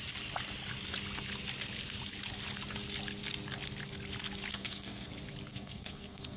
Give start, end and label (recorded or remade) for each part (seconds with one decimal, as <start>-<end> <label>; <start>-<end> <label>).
0.0-4.5 recorded; 4.5-5.1 remade; 5.1-5.5 recorded; 5.5-6.4 remade